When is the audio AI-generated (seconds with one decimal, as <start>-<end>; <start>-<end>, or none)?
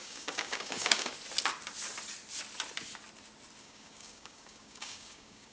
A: 0.0-1.1; 3.6-5.5